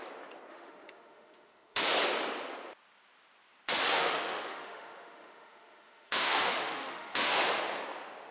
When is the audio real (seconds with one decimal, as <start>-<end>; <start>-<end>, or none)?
0.0-0.5; 1.8-3.9; 7.4-8.3